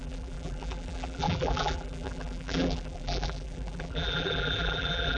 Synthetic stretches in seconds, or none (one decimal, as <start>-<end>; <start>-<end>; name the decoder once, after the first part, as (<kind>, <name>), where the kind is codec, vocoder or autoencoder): 0.0-5.2 (vocoder, BigVGAN v2)